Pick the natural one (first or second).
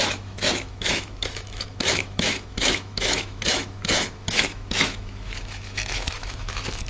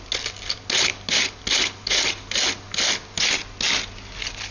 second